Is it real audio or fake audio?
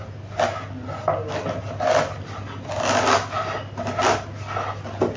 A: real